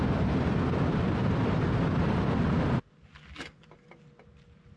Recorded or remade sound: recorded